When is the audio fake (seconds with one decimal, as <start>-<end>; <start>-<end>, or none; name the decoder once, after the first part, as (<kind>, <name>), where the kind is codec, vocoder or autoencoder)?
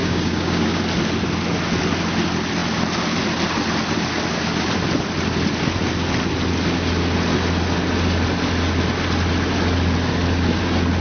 0.0-0.8 (codec, DAC)